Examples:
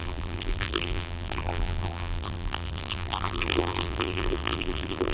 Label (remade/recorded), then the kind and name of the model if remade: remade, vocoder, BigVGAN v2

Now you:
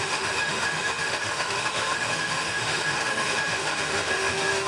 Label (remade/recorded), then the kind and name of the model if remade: remade, autoencoder, DAC-VAE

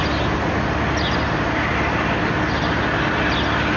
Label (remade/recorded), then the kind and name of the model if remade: recorded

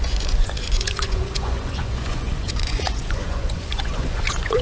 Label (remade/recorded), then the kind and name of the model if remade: remade, vocoder, Vocos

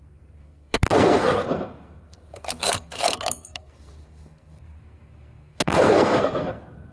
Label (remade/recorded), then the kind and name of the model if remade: remade, codec, SNAC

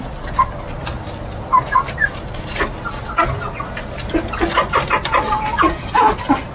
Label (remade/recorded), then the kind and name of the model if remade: recorded